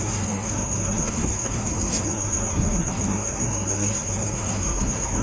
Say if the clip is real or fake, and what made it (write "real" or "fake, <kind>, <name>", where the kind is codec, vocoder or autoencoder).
fake, codec, SNAC